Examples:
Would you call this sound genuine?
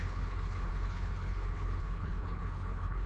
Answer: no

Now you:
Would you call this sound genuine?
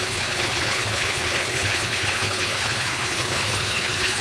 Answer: no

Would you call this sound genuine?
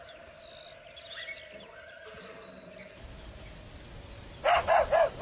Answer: yes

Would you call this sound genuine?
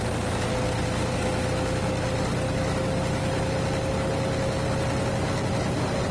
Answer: yes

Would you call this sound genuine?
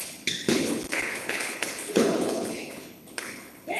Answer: no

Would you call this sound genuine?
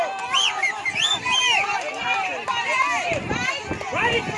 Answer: yes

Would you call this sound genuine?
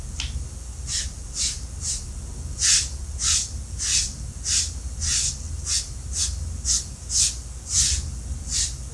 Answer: yes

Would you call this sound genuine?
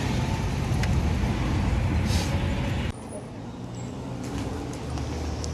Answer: yes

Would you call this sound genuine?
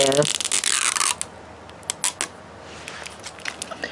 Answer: yes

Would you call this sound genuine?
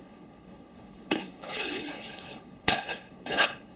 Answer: no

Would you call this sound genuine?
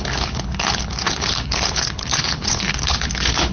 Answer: no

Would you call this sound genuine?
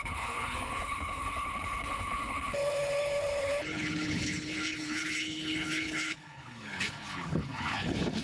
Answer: no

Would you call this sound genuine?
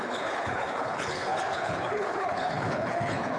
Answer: no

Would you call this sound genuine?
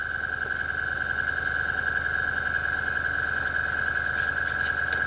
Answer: yes